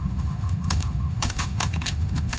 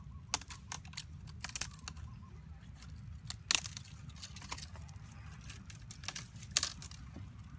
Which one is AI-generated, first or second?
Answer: first